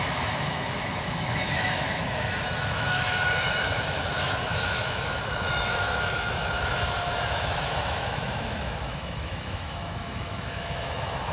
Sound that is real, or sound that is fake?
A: fake